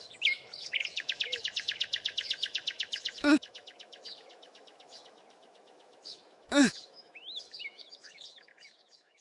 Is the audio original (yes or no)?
no